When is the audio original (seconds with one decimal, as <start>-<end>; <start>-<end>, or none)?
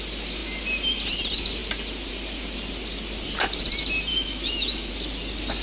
0.0-4.1; 4.9-5.6